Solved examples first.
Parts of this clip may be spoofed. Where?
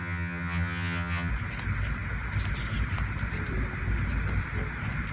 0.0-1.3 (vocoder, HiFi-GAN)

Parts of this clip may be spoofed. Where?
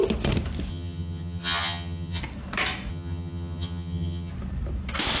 0.7-2.2 (vocoder, HiFi-GAN); 2.9-4.3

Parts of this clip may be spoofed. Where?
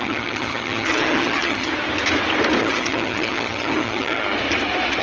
0.0-1.7 (vocoder, HiFi-GAN); 2.6-4.2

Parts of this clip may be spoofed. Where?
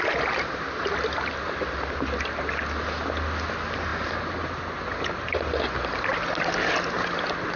none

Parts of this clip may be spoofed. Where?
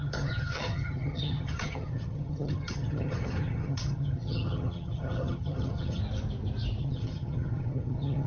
0.0-6.0 (vocoder, HiFi-GAN); 6.8-8.3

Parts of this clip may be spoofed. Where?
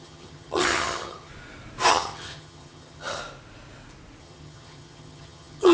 0.0-1.3 (vocoder, HiFi-GAN); 1.9-3.2; 4.2-5.7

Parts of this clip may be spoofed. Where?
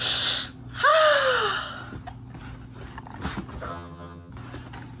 3.7-4.3 (vocoder, HiFi-GAN)